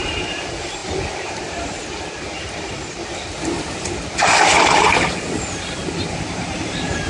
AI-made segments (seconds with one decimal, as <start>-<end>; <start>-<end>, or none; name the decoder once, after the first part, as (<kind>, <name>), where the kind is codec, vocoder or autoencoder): 0.0-1.8 (vocoder, BigVGAN v2); 6.1-7.1